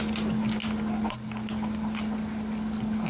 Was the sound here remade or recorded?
recorded